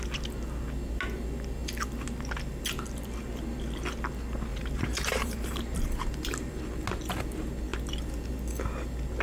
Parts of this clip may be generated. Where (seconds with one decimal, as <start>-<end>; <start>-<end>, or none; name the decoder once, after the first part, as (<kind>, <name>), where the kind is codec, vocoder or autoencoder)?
4.5-6.6 (vocoder, BigVGAN v2)

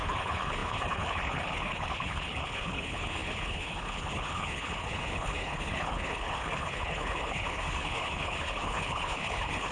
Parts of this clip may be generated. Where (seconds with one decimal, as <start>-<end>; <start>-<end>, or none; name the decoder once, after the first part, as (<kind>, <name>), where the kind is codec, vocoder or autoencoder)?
0.0-9.7 (codec, HILCodec)

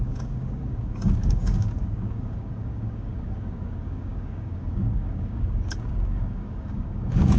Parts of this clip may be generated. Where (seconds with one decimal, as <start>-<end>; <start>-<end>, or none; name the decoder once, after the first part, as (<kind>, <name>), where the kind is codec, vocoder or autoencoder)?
0.0-7.4 (codec, DAC)

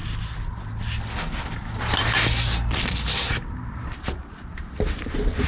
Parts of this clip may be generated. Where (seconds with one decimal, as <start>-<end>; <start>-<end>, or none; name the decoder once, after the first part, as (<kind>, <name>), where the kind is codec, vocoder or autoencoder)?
4.5-5.5 (vocoder, BigVGAN v2)

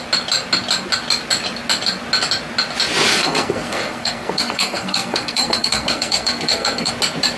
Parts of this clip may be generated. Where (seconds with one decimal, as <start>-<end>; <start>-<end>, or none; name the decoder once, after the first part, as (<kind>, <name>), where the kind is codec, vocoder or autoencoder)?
3.1-6.9 (codec, SNAC)

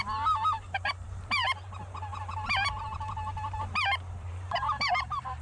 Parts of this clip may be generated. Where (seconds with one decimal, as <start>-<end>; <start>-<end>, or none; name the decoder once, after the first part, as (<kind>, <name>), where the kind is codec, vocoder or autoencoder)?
0.0-5.4 (vocoder, BigVGAN v2)